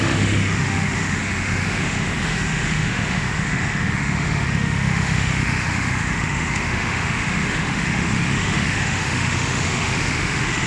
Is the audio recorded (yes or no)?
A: no